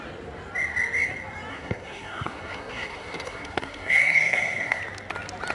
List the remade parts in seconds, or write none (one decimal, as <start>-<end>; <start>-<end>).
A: 1.5-4.8